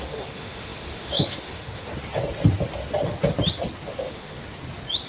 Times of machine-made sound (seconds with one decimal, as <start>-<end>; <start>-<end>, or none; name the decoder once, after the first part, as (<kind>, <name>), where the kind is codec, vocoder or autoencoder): 0.0-1.9 (autoencoder, DAC-VAE); 4.0-4.4